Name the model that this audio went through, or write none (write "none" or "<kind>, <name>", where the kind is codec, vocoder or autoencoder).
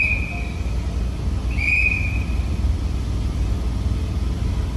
none